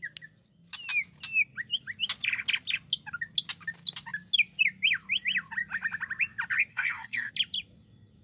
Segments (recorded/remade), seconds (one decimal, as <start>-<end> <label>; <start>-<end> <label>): 0.0-6.7 recorded; 6.7-7.3 remade; 7.3-8.2 recorded